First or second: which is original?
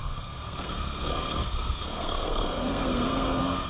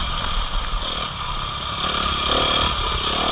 second